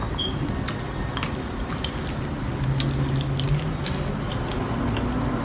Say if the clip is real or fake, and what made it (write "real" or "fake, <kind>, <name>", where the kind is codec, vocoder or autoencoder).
real